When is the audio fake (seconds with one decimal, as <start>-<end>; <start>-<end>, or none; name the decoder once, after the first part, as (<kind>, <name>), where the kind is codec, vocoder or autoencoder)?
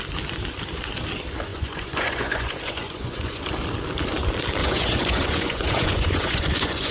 1.5-3.4 (vocoder, Vocos); 4.6-6.9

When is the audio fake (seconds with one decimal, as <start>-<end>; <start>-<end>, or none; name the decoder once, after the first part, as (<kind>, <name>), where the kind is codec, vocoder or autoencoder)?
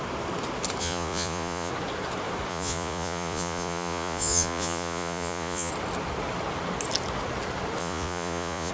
0.8-1.7 (vocoder, Vocos); 2.5-5.7; 7.8-8.7